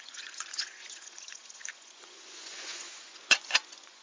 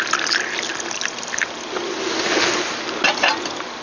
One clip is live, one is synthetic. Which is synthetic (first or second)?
first